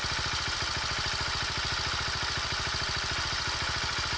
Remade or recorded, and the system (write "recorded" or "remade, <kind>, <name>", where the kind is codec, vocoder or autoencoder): recorded